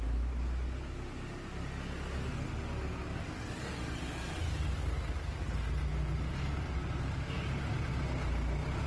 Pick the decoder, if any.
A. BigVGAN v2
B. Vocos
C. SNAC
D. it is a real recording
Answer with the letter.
D